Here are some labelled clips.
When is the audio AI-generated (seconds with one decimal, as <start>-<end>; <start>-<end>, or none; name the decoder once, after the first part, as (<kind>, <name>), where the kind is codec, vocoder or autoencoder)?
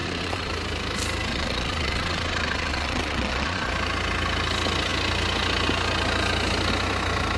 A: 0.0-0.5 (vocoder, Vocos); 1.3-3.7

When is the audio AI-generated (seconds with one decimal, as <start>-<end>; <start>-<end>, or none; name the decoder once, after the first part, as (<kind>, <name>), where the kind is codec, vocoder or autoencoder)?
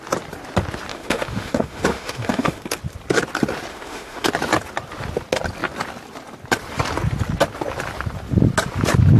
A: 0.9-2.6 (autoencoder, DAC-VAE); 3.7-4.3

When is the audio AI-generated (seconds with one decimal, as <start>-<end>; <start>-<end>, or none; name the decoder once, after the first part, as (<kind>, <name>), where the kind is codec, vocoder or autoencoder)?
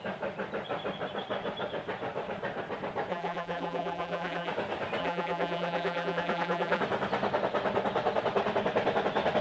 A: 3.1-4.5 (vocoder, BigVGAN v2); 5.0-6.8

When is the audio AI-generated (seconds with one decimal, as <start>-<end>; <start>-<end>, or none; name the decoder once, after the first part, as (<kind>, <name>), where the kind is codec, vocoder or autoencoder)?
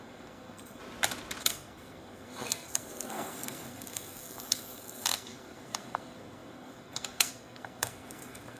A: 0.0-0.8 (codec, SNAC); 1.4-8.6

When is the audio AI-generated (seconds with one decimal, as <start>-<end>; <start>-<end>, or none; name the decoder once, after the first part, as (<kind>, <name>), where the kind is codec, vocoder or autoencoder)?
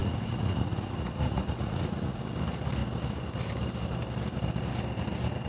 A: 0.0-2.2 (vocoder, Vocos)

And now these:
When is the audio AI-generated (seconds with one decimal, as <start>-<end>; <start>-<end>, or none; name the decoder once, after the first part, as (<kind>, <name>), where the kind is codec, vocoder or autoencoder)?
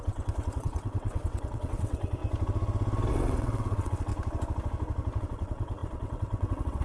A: 0.0-2.2 (vocoder, WaveNeXt); 3.1-4.1; 5.2-6.8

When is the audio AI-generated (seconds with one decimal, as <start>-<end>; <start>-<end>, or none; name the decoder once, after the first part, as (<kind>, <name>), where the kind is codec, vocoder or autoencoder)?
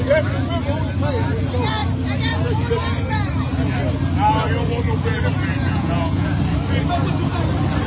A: 5.5-6.3 (vocoder, Vocos)